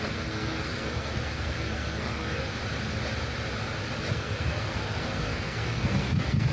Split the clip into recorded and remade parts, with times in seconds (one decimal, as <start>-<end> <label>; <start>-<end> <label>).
0.0-2.6 remade; 2.6-4.1 recorded; 4.1-6.5 remade